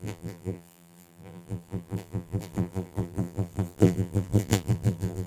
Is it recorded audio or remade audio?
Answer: remade